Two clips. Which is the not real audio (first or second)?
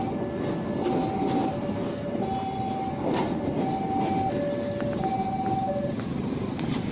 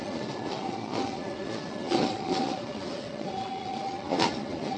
second